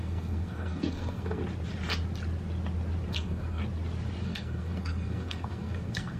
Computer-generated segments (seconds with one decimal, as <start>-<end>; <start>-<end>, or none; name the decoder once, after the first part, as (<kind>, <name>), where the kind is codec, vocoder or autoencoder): 0.0-1.4 (codec, SNAC); 3.1-3.6; 4.2-6.2